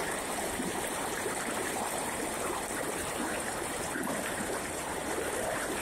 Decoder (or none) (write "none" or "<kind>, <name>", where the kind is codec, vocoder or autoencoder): vocoder, BigVGAN v2